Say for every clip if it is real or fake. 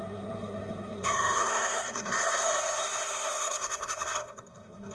fake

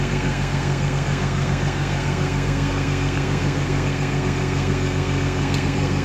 fake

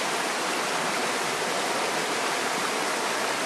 real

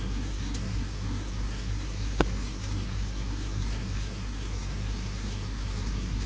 fake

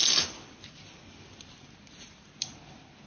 real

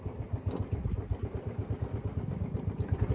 real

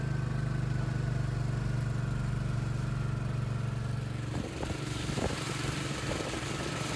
real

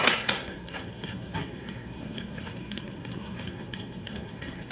fake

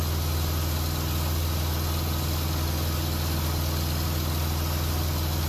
real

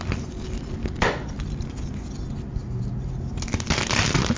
real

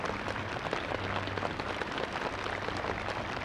real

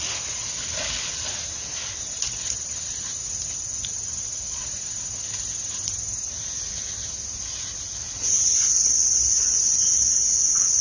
real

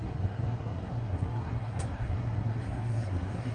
fake